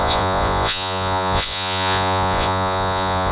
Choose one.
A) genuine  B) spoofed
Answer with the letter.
B